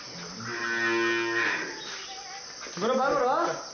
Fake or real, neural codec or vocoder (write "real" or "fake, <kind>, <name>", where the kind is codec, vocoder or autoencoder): real